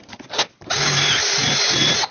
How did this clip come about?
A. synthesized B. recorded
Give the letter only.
B